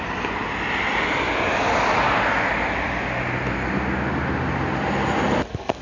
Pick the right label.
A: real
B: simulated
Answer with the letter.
A